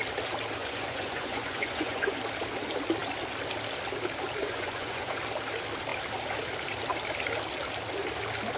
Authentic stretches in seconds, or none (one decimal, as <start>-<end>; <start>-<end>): 0.0-0.6; 2.2-4.4; 5.2-8.6